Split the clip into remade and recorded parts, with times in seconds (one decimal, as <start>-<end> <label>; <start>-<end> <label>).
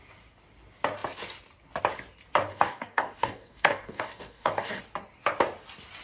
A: 0.0-2.5 recorded; 2.5-4.8 remade; 4.8-6.0 recorded